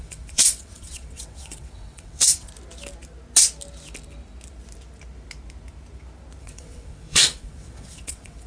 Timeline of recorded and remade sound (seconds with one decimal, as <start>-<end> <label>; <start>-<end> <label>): 0.0-2.5 remade; 2.5-6.4 recorded; 6.4-8.5 remade